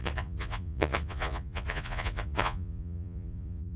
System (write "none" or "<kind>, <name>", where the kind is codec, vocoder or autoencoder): vocoder, Vocos